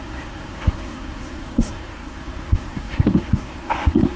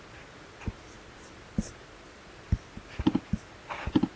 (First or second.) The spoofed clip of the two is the first